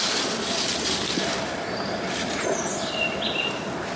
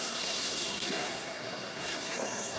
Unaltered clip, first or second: first